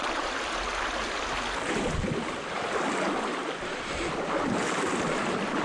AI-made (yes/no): no